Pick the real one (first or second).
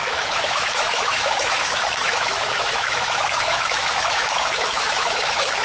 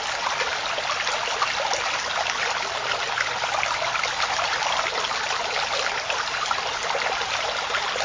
second